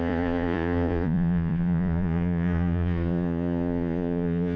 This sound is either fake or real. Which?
fake